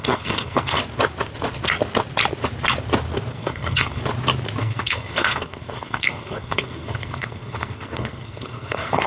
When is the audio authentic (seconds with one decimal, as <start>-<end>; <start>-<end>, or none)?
0.8-3.3; 4.0-4.6